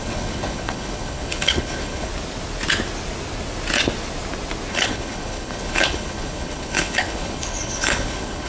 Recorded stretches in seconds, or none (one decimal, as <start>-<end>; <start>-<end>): 2.1-4.7